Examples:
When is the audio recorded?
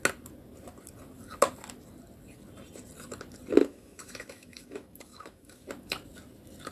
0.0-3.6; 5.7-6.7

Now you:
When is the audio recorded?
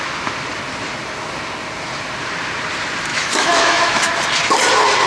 0.0-3.1; 4.1-5.1